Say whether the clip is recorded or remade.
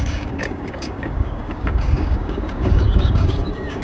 remade